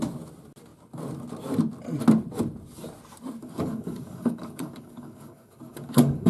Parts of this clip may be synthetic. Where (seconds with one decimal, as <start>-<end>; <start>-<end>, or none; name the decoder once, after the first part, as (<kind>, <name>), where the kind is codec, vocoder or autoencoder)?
3.4-6.3 (codec, DAC)